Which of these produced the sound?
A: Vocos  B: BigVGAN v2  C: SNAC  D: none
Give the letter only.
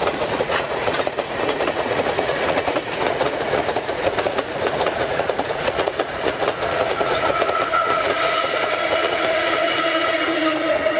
A